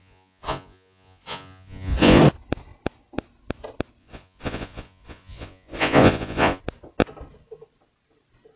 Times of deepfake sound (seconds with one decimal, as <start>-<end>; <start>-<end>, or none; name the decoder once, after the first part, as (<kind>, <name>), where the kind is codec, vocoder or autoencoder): 0.0-2.2 (vocoder, Vocos); 4.0-6.6